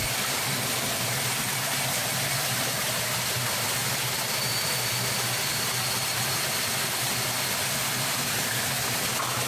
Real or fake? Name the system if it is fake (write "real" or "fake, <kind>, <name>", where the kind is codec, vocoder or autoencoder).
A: real